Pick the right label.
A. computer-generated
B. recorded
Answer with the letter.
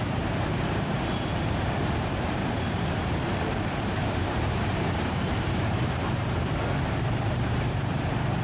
A